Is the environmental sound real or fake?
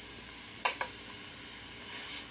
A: real